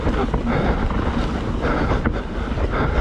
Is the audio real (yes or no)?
yes